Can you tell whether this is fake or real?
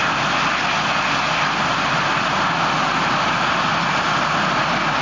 real